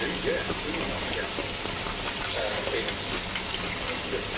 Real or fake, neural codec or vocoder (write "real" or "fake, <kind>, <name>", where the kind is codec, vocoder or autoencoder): real